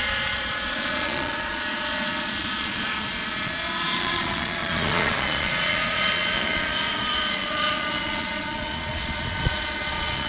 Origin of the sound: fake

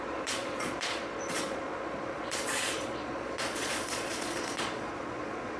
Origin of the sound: fake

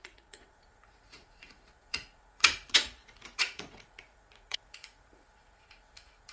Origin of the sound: fake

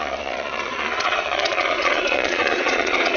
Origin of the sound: fake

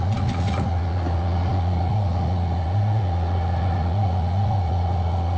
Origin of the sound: fake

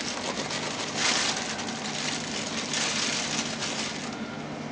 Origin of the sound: real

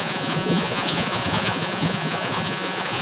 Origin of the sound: fake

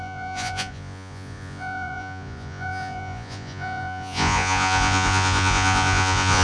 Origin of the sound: fake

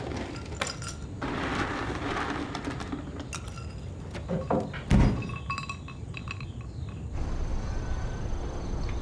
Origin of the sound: real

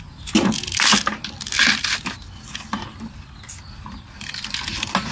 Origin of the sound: real